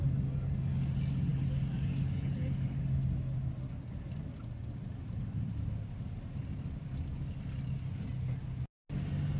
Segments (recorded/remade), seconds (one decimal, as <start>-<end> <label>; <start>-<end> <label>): 0.0-9.4 recorded